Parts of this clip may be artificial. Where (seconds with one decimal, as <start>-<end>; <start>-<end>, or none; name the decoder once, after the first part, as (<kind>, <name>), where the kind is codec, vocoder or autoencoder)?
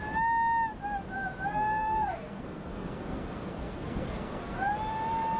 1.5-4.7 (codec, SNAC)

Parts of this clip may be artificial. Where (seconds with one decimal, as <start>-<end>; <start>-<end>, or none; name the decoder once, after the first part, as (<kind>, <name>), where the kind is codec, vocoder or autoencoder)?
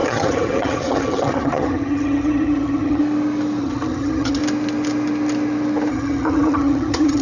0.0-3.0 (vocoder, HiFi-GAN); 3.6-4.4; 5.9-7.2